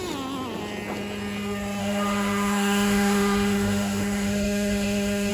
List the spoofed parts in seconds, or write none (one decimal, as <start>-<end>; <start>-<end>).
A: 1.8-5.3